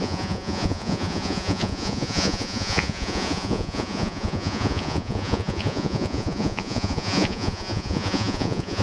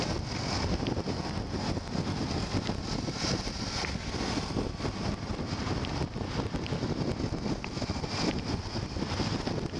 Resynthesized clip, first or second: first